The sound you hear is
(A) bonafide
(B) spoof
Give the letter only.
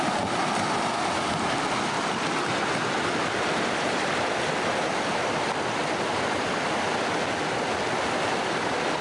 A